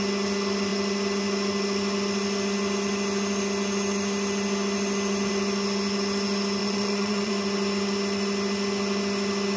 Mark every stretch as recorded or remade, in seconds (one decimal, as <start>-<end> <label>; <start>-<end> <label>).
0.0-6.6 recorded; 6.6-7.3 remade; 7.3-9.6 recorded